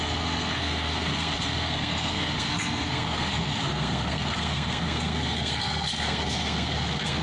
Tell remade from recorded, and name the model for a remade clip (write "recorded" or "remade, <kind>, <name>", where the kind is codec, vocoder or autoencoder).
remade, codec, SNAC